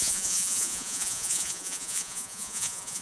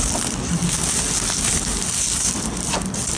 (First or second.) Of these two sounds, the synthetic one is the first